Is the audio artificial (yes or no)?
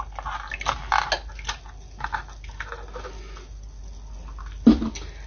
no